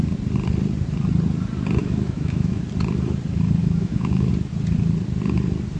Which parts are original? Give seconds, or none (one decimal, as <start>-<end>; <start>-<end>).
0.0-1.8; 2.6-3.6; 4.3-5.8